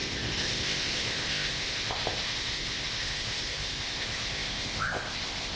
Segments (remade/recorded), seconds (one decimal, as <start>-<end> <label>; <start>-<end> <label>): 0.0-5.6 remade